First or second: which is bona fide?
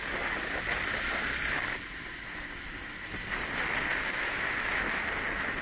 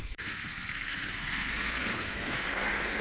first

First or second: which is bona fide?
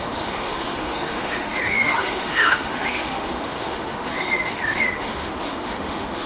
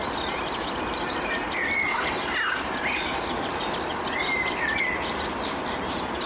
second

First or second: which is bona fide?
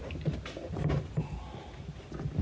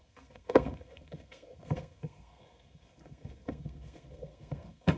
first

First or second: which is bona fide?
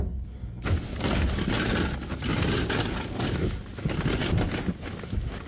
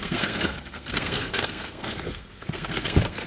first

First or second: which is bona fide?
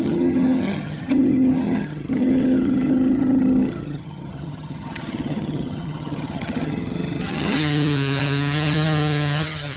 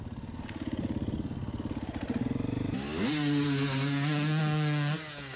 second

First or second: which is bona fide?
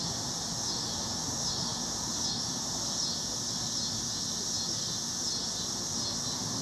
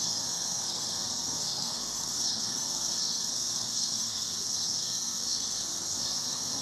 first